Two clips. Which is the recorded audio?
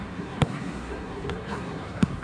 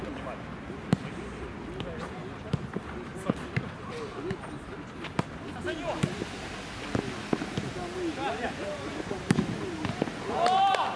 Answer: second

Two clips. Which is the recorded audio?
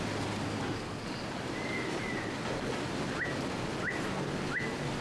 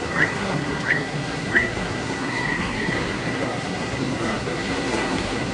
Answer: first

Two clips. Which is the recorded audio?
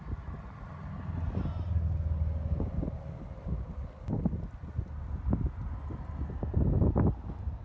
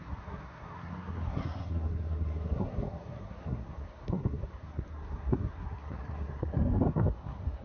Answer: first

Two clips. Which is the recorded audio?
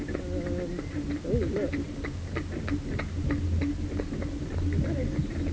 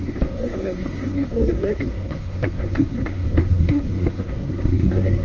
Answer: first